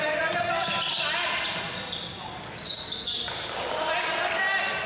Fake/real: real